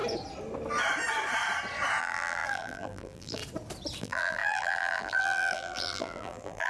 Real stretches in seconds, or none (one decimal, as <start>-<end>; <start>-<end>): 0.0-2.0; 3.4-4.0